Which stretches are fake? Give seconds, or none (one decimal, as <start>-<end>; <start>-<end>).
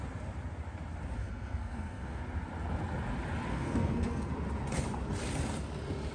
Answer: 1.2-2.2; 3.5-4.3